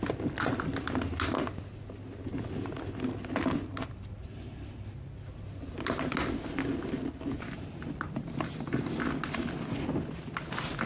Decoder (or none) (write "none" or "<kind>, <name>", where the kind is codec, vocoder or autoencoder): none